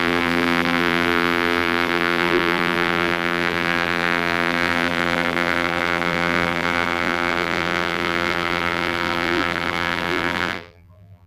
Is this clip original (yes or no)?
no